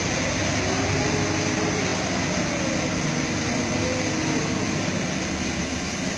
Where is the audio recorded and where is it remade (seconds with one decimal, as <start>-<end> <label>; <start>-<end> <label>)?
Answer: 0.0-6.2 recorded